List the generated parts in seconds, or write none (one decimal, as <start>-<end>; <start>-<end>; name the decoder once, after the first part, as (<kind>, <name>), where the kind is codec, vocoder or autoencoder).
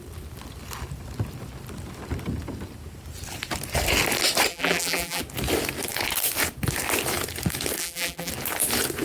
4.5-5.2 (vocoder, BigVGAN v2); 7.8-8.3